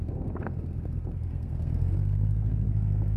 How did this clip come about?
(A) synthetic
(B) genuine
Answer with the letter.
A